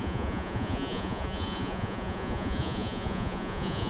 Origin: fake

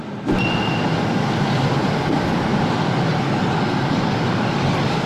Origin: real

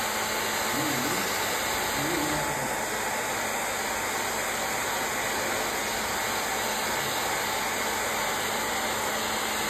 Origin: real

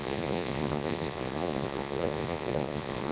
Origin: fake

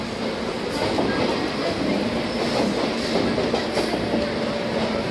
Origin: real